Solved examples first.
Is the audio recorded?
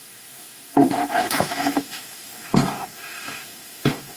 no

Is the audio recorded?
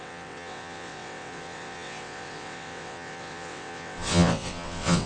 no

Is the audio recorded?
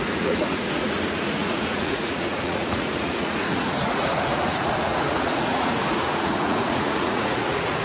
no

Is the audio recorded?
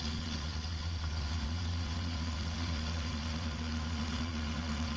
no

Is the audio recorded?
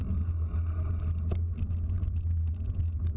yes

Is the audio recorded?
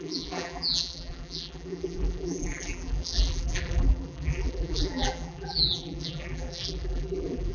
no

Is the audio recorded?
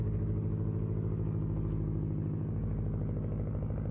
yes